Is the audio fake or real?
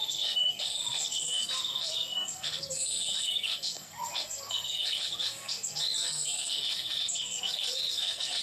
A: fake